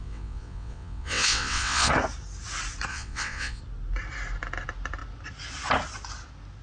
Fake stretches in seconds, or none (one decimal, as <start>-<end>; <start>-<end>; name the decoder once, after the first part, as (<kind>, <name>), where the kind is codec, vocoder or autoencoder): 0.0-1.9 (vocoder, WaveNeXt); 2.9-3.6